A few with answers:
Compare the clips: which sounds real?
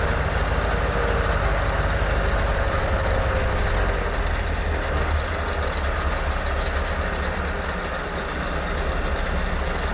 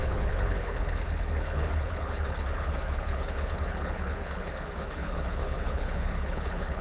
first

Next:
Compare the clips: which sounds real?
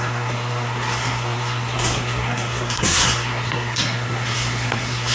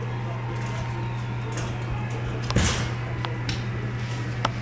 second